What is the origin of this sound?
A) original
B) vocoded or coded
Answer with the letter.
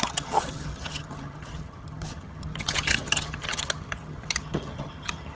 B